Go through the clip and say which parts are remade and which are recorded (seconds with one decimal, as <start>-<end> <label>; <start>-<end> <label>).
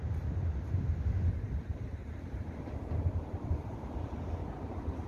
0.0-1.9 recorded; 1.9-5.1 remade